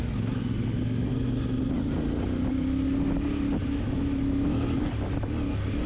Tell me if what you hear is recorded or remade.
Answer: recorded